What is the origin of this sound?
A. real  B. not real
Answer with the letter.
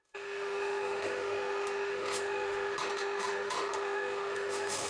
B